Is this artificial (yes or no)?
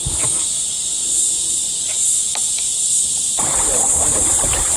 no